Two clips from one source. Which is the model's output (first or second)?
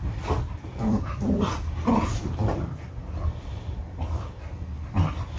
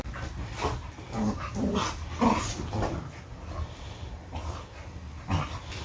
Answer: first